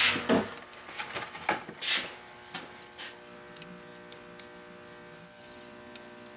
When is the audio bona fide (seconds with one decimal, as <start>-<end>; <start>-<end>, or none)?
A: 0.0-6.4